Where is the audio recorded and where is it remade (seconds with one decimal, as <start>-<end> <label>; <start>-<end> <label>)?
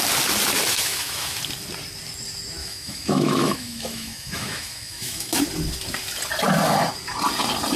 0.0-0.7 recorded; 0.7-1.4 remade; 1.4-2.6 recorded; 2.6-5.4 remade; 5.4-7.8 recorded